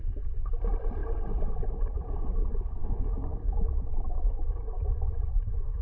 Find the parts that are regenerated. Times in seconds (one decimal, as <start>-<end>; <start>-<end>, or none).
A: 2.8-5.8